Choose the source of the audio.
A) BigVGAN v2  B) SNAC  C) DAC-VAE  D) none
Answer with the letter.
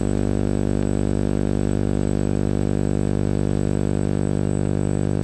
C